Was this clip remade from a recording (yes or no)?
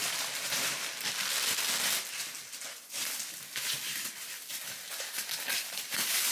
no